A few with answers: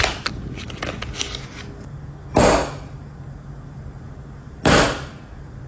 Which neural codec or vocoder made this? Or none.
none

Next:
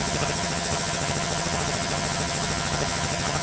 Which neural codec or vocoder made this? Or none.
vocoder, HiFi-GAN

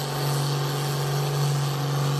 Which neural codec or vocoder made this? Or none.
none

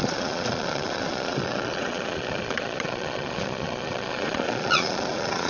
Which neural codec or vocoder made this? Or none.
vocoder, Vocos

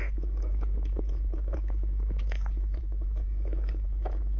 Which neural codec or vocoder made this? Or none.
autoencoder, DAC-VAE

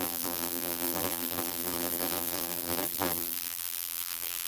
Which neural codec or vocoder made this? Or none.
vocoder, BigVGAN v2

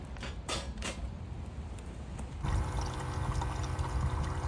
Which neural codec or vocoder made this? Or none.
none